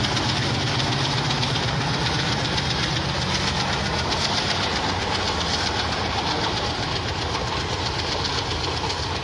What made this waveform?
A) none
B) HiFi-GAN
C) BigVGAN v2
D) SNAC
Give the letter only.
A